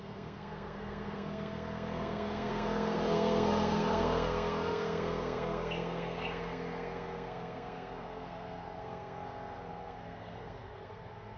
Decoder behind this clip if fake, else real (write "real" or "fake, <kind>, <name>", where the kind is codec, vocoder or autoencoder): fake, codec, SNAC